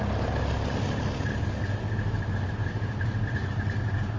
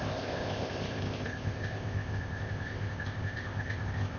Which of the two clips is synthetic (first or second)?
second